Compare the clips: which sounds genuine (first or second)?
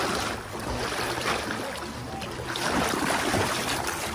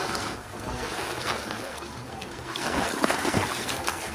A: first